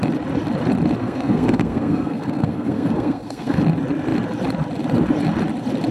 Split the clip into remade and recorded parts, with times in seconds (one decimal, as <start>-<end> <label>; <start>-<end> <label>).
0.0-1.0 recorded; 1.0-3.6 remade; 3.6-5.9 recorded